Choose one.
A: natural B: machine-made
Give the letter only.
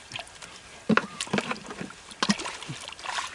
A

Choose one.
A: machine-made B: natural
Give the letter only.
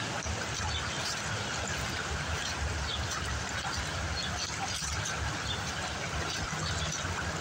B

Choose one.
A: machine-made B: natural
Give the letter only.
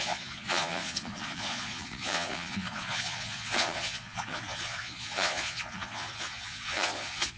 A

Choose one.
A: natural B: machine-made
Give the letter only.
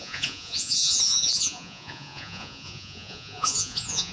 B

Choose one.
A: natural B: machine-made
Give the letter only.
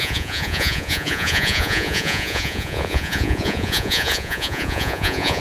B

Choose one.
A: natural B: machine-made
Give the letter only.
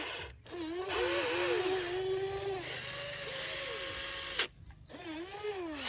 A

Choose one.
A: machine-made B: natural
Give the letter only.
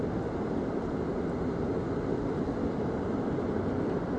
B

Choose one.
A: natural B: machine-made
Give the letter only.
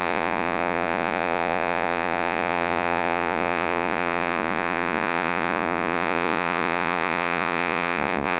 B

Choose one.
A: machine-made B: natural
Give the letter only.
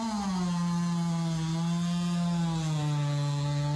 B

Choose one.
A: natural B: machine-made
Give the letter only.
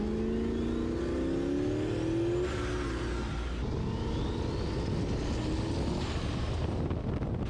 A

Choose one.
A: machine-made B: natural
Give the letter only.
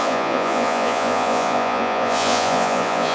A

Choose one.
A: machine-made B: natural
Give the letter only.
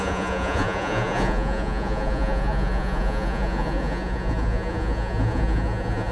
A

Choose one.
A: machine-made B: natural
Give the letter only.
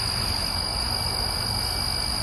B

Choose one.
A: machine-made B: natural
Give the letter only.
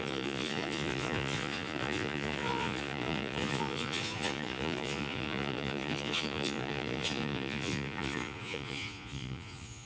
A